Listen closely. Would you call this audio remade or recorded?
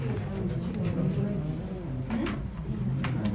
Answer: recorded